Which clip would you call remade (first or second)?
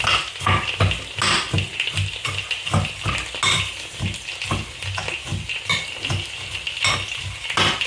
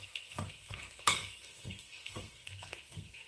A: second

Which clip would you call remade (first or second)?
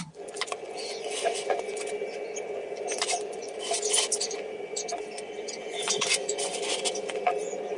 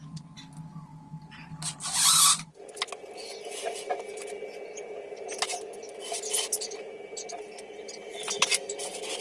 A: first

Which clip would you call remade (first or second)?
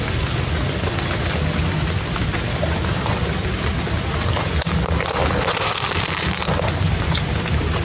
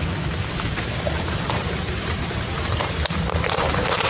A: second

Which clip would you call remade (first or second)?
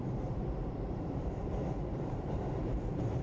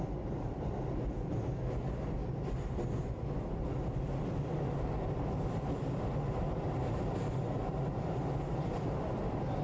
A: first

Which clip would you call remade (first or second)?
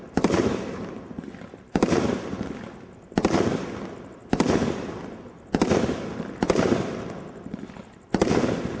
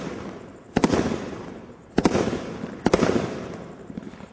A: second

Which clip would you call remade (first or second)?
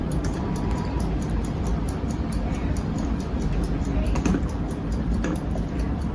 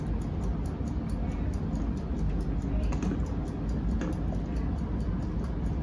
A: first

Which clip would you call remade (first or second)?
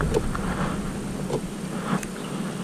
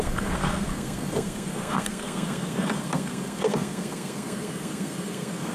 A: second